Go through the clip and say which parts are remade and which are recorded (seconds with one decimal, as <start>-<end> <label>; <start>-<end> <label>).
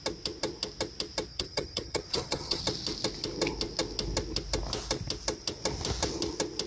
0.0-1.3 recorded; 1.3-2.6 remade; 2.6-6.7 recorded